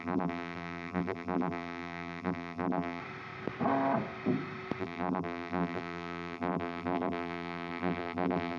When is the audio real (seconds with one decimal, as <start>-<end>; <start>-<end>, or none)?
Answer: 3.0-4.8